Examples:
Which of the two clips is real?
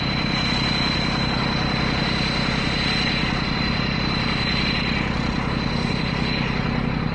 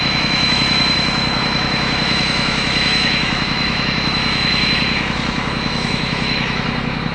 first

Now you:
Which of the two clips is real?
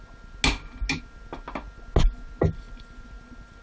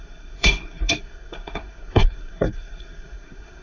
first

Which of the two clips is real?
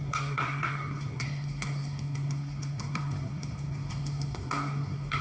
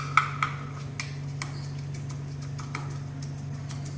second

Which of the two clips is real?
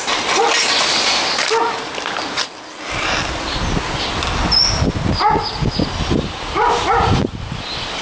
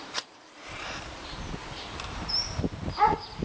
first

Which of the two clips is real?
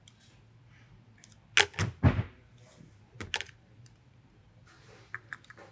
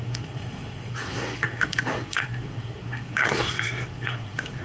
first